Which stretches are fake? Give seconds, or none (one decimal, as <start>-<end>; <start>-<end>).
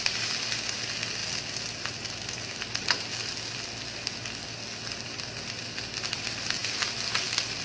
none